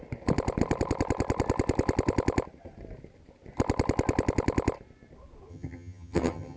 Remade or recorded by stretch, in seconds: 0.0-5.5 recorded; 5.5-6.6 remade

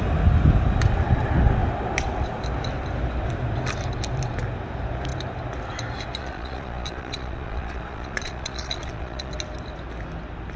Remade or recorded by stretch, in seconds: 0.0-6.2 recorded; 6.2-9.3 remade; 9.3-10.6 recorded